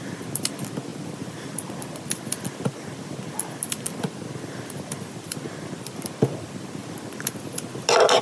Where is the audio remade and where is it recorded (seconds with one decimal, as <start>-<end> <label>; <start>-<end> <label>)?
0.0-8.2 recorded